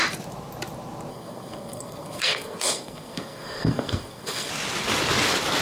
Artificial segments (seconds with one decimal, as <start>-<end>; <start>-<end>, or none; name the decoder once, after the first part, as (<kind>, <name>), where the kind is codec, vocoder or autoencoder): 1.1-4.5 (codec, SNAC)

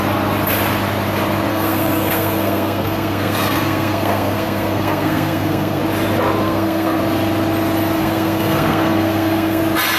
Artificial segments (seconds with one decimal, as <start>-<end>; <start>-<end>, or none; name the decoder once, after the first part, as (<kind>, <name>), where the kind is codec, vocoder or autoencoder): 1.5-5.8 (codec, SNAC); 6.4-7.0; 8.0-9.6

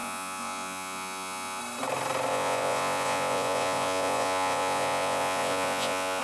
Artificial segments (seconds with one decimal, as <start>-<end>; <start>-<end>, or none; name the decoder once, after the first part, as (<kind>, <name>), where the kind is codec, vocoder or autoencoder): 0.0-1.6 (vocoder, Vocos); 2.3-6.2

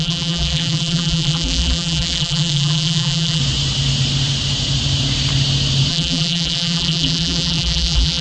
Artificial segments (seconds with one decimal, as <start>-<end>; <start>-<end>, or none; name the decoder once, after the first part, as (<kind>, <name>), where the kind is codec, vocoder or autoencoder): 0.0-3.4 (vocoder, BigVGAN v2); 5.9-8.2

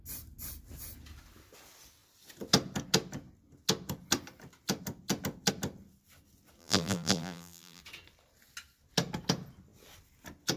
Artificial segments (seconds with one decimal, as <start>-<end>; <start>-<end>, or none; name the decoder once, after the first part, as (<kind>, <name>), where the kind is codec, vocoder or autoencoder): 6.6-7.8 (vocoder, BigVGAN v2)